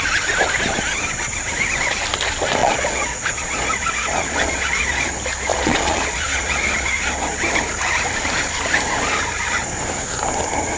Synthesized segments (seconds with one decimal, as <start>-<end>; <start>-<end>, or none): 2.6-5.1; 5.5-7.0